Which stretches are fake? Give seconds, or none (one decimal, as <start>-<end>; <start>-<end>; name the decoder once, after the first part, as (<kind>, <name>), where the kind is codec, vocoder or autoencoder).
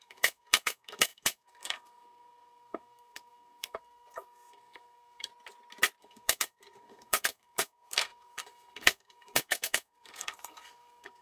0.0-5.3 (codec, SNAC); 6.0-11.2